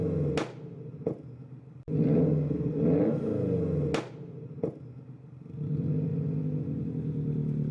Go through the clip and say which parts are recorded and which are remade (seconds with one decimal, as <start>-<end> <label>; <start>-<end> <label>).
0.0-7.7 recorded